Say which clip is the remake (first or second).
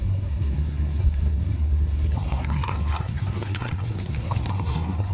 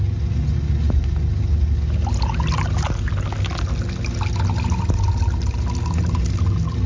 first